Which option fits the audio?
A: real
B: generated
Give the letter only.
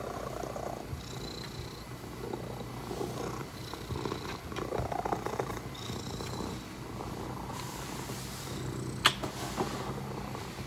A